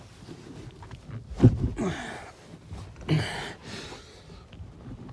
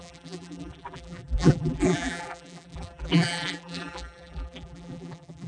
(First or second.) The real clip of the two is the first